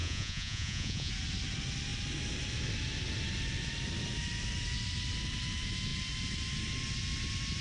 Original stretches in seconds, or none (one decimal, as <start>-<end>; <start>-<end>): 1.1-7.6